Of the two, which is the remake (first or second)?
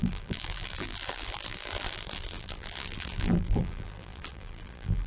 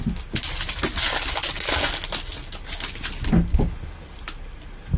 first